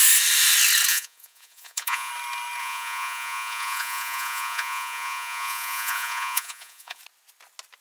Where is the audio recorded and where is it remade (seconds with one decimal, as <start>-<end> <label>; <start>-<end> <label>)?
0.0-0.9 recorded; 0.9-2.1 remade; 2.1-2.6 recorded; 2.6-7.0 remade; 7.0-7.8 recorded